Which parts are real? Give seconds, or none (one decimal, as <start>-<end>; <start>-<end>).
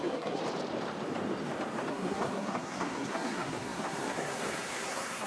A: 0.4-1.9